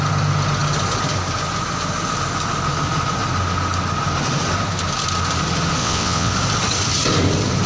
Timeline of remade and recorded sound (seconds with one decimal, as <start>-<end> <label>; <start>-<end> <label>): 0.0-5.8 recorded; 5.8-6.3 remade; 6.3-7.7 recorded